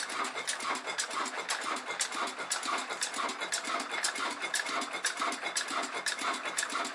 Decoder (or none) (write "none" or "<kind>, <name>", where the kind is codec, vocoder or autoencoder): none